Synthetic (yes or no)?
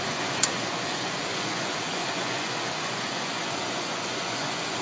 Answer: yes